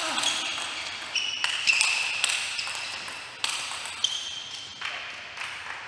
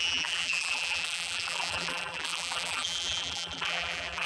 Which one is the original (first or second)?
first